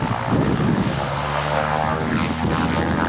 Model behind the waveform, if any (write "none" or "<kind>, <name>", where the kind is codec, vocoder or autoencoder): none